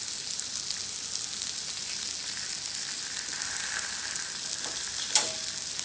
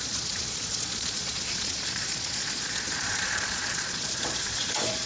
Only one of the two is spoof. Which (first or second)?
second